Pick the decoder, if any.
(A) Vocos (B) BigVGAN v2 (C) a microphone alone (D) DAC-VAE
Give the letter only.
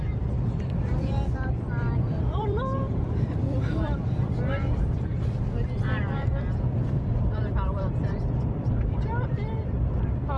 B